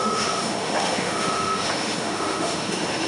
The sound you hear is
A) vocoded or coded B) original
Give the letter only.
A